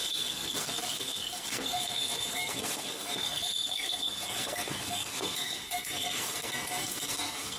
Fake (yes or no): yes